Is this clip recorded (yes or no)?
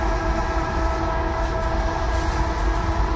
yes